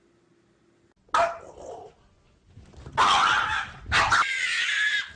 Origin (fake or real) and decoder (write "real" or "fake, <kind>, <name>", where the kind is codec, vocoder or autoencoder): real